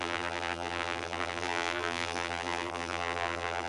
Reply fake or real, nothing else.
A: fake